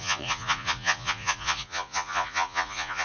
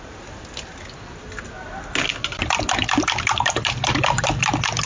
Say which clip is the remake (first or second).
first